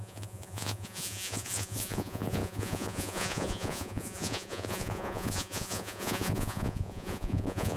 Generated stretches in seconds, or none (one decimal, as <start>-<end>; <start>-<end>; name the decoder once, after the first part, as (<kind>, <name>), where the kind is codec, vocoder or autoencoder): 0.0-7.8 (vocoder, Vocos)